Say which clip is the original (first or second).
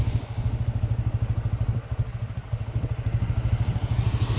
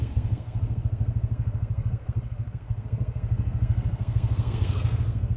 first